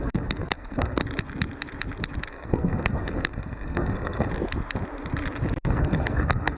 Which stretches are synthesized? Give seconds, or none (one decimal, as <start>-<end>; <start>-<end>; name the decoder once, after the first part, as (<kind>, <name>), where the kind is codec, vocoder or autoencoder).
0.0-1.0 (codec, SNAC); 2.3-4.3; 5.6-6.6